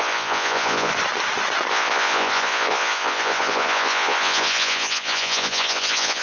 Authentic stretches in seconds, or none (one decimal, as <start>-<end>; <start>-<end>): 0.9-1.7

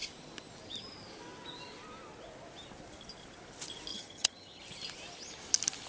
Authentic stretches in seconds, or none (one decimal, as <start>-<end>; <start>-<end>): 0.0-3.9; 4.6-5.9

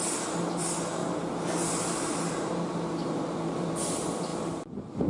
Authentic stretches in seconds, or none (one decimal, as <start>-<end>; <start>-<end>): 0.0-1.0; 3.7-5.1

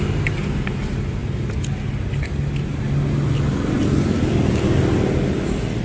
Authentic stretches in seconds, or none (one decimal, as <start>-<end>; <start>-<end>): 0.0-5.8

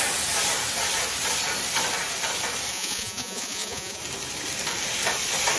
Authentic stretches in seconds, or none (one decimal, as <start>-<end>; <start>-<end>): 0.0-2.7; 4.0-5.6

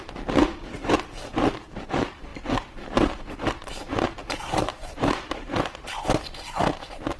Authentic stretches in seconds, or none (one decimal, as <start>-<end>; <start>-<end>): 0.0-4.2; 5.4-7.2

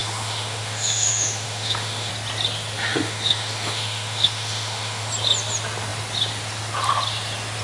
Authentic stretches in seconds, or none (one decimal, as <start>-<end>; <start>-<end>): 2.1-2.8; 5.1-7.6